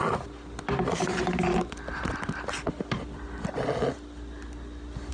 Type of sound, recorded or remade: recorded